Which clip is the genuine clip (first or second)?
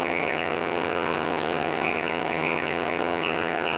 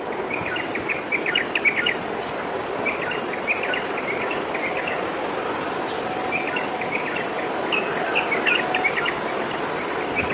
second